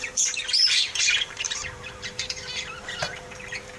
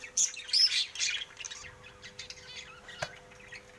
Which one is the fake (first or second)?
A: first